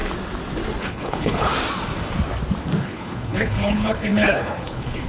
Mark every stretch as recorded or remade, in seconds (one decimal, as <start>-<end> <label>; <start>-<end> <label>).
0.0-0.8 recorded; 0.8-1.5 remade; 1.5-2.8 recorded; 2.8-5.1 remade